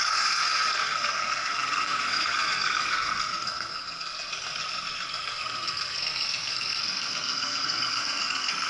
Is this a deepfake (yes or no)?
yes